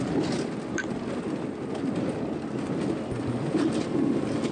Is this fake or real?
real